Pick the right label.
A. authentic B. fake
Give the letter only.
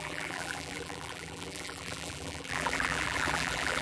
B